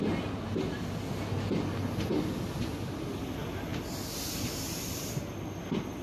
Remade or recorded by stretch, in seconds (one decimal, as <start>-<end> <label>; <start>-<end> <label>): 0.0-6.0 recorded